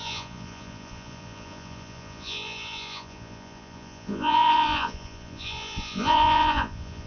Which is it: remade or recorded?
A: remade